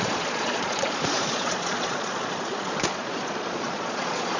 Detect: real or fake fake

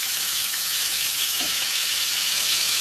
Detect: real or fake fake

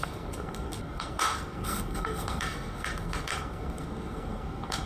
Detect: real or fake fake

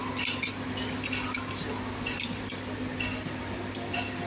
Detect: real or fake real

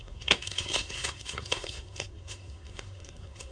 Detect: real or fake fake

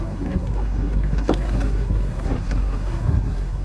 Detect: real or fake fake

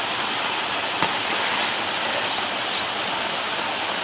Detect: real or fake real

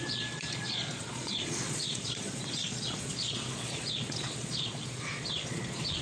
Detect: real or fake fake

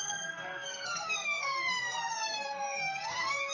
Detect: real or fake fake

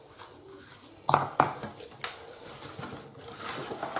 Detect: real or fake real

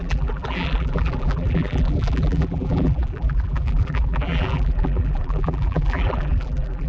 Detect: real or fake fake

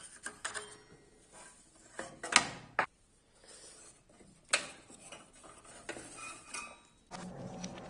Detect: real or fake real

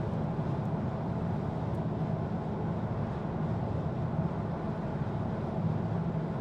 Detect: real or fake real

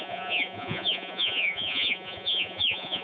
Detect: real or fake fake